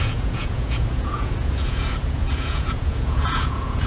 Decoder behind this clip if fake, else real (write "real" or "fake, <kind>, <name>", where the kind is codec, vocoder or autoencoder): fake, vocoder, Vocos